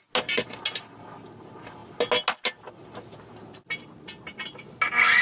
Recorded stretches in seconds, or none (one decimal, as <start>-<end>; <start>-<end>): 0.0-5.2